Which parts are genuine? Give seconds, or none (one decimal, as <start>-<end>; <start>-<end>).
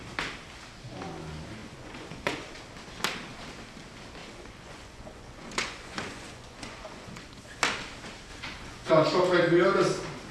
0.0-1.6; 2.5-4.2; 7.4-8.3; 8.9-10.3